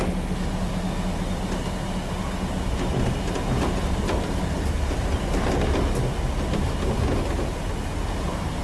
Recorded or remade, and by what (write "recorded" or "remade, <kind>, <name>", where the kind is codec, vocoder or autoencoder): recorded